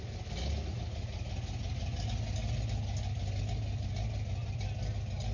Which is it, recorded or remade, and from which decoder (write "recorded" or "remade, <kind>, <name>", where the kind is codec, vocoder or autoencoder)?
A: recorded